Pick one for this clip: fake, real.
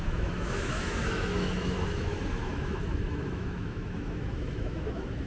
fake